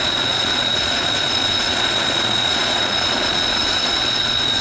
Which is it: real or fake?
fake